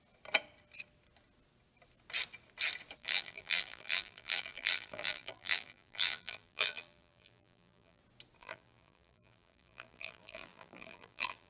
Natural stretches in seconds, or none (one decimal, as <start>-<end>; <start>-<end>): 0.0-3.0; 8.0-8.4

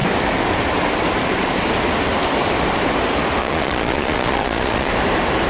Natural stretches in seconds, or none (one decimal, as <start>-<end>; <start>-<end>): 0.0-3.4; 4.9-5.5

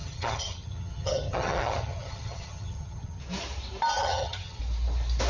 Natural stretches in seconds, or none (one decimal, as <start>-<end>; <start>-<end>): 3.2-4.0; 4.6-5.3

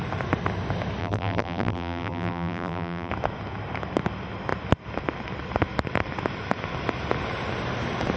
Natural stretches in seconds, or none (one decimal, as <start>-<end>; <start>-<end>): 0.0-1.0; 3.1-8.2